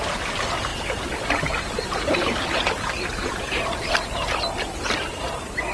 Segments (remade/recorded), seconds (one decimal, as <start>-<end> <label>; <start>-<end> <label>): 0.0-0.7 recorded; 0.7-4.1 remade; 4.1-5.7 recorded